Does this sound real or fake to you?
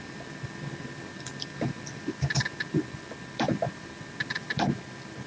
fake